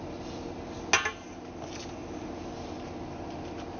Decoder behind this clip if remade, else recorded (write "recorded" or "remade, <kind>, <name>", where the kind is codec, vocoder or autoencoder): recorded